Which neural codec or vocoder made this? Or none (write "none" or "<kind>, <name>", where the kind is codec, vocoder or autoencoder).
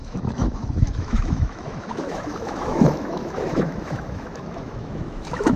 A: autoencoder, DAC-VAE